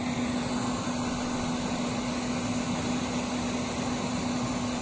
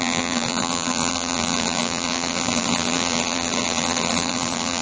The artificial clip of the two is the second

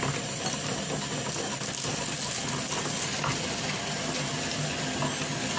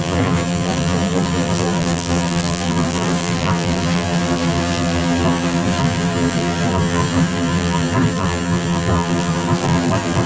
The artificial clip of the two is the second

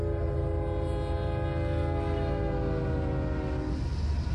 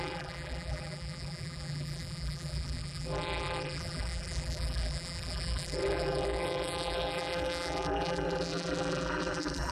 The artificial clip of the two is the second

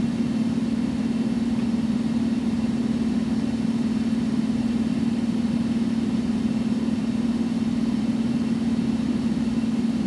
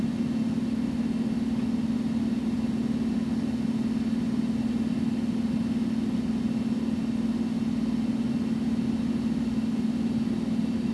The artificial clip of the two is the first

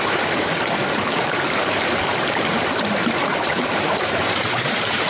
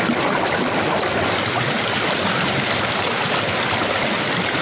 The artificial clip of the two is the first